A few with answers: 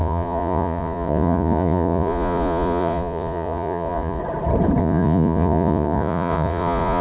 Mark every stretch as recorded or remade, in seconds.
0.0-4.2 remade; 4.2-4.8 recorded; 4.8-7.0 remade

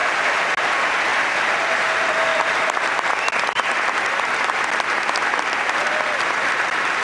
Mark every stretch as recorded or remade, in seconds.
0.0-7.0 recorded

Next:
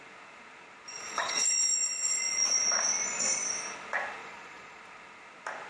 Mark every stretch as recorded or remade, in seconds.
0.0-0.9 recorded; 0.9-2.8 remade; 2.8-4.2 recorded; 4.2-4.8 remade; 4.8-5.7 recorded

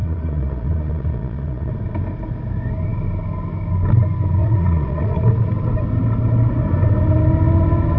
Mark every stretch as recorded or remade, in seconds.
0.0-1.7 remade; 1.7-4.4 recorded; 4.4-5.3 remade; 5.3-8.0 recorded